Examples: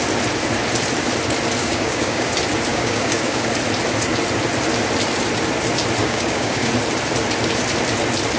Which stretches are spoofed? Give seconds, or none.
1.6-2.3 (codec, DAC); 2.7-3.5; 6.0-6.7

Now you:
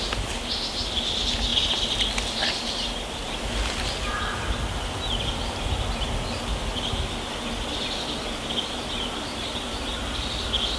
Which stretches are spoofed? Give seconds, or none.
none

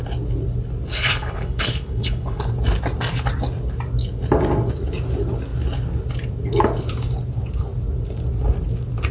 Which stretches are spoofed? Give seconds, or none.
0.9-2.4 (codec, HILCodec)

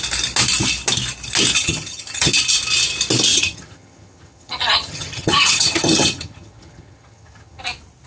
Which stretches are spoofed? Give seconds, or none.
1.5-2.3 (vocoder, HiFi-GAN); 3.3-7.6

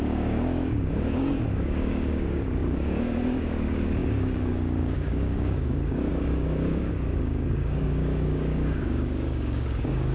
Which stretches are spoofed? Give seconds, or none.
0.0-10.1 (codec, DAC)

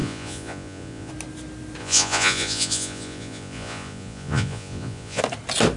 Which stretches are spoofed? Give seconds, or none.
0.0-1.1 (vocoder, Vocos); 1.8-5.2

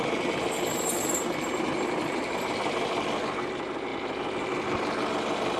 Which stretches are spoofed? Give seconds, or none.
none

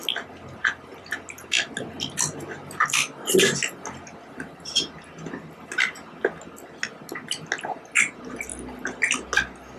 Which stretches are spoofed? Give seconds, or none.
none